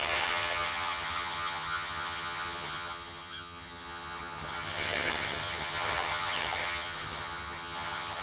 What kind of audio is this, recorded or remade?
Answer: remade